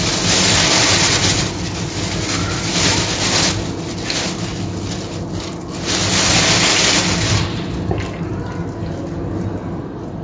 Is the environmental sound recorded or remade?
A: recorded